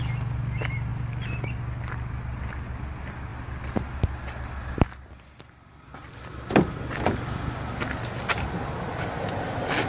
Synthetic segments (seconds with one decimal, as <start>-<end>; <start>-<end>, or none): none